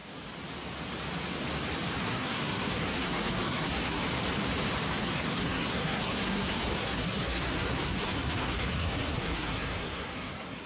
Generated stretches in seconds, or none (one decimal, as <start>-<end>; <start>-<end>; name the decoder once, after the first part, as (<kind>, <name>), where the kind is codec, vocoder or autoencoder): 2.0-4.0 (codec, SNAC); 5.0-10.7